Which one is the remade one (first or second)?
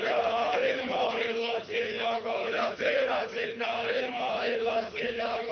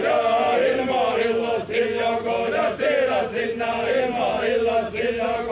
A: first